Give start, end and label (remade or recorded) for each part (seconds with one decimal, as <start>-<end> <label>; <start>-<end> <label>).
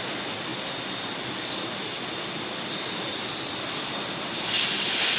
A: 0.0-5.2 recorded